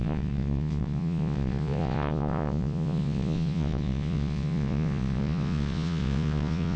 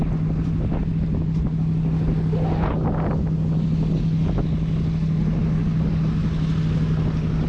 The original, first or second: second